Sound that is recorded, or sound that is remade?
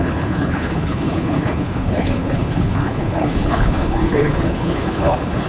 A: remade